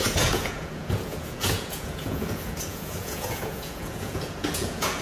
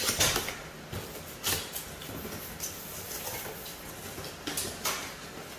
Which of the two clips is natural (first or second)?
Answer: second